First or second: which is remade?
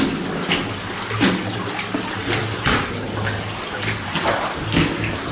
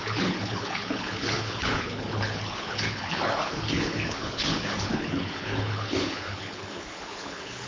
second